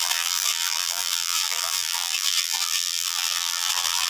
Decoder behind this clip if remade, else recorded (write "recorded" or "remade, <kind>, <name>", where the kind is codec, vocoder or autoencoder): remade, vocoder, BigVGAN v2